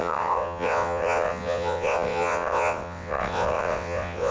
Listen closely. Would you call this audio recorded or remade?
remade